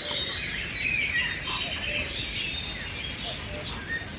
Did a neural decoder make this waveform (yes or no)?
no